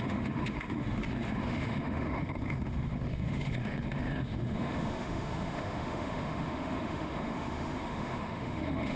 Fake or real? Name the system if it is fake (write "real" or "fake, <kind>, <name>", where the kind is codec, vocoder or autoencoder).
fake, autoencoder, DAC-VAE